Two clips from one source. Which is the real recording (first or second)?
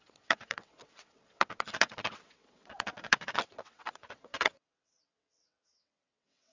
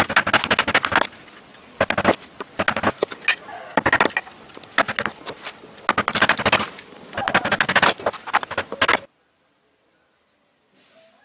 second